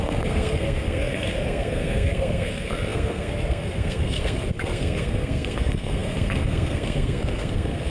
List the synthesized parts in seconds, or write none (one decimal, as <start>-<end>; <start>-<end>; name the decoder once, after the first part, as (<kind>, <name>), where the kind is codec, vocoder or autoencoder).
0.0-7.9 (codec, SNAC)